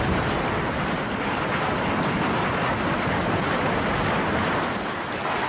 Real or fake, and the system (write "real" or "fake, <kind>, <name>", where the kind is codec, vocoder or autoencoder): real